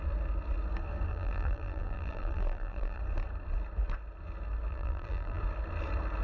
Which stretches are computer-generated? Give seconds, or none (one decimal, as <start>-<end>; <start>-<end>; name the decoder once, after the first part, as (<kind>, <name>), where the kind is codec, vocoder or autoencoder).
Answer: 1.1-3.0 (vocoder, BigVGAN v2); 4.7-5.4